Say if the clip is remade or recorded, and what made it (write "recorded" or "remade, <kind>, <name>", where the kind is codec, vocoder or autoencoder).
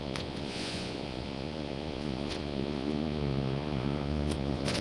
remade, vocoder, Vocos